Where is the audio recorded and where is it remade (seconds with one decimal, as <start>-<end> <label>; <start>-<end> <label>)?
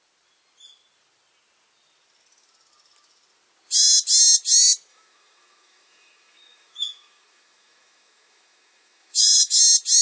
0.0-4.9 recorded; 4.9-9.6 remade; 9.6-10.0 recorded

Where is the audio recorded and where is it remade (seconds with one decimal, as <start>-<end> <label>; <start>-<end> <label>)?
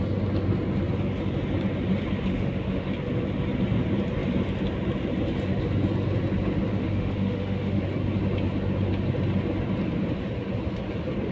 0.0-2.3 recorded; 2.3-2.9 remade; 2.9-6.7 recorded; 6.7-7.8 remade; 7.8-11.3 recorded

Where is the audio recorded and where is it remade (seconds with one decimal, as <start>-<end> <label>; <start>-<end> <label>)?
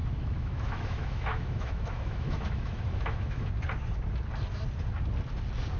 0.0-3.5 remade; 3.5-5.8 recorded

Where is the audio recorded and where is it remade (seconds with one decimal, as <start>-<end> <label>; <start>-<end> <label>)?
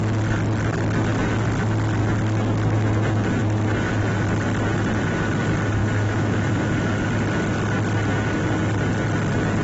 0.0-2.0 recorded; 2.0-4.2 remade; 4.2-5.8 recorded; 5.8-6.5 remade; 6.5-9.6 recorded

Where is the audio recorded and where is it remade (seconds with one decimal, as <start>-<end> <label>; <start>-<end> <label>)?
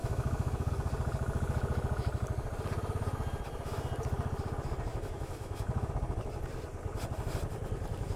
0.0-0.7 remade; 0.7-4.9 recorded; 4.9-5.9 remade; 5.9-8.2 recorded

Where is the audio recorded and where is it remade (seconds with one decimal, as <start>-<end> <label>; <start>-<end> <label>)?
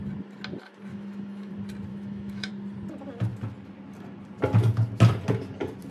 0.0-0.9 recorded; 0.9-1.5 remade; 1.5-1.9 recorded; 1.9-2.5 remade; 2.5-5.9 recorded